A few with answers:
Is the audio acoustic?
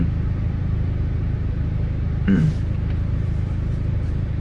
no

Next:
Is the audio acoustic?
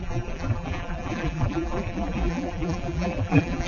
no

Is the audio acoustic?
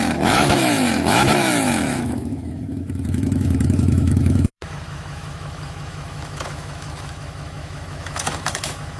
no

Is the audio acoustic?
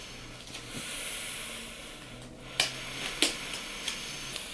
yes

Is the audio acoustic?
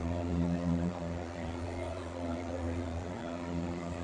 no